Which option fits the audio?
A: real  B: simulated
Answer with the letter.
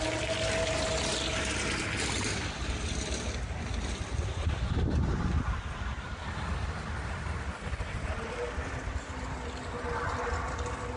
A